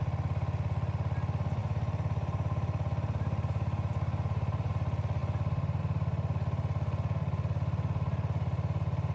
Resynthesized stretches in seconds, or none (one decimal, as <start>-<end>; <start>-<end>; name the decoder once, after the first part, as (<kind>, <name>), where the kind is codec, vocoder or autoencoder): 1.6-4.7 (vocoder, BigVGAN v2)